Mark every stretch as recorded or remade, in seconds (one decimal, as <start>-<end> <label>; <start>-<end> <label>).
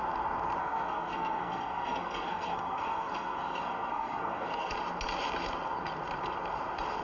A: 0.0-0.6 recorded; 0.6-4.7 remade; 4.7-7.0 recorded